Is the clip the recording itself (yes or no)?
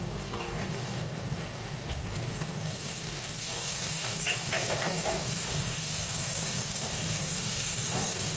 no